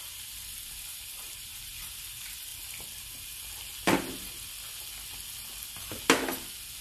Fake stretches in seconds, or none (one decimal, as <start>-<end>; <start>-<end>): 0.9-2.0